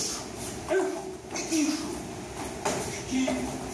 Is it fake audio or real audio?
real